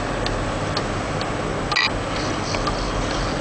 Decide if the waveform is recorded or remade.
recorded